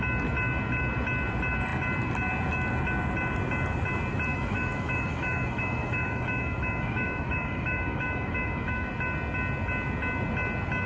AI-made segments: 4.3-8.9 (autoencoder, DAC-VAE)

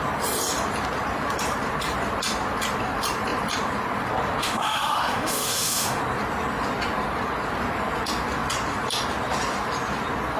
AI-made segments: 4.4-6.0 (autoencoder, DAC-VAE)

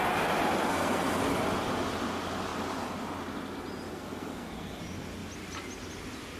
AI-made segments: 0.7-1.2 (codec, SNAC); 3.9-4.8

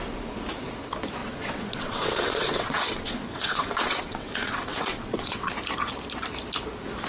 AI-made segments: 1.2-5.5 (vocoder, WaveNeXt)

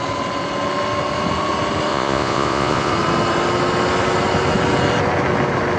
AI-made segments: 1.9-2.9 (vocoder, Vocos)

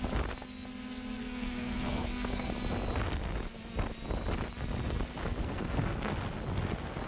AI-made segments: 1.2-2.5 (codec, SNAC); 5.2-6.1

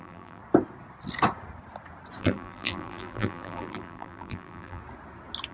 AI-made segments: 0.0-0.4 (vocoder, BigVGAN v2); 2.2-4.8